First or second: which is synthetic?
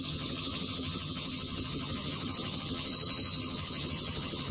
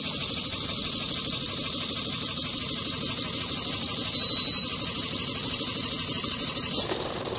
first